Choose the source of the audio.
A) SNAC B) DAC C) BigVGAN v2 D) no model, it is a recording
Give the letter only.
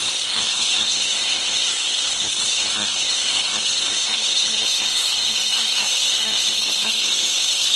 A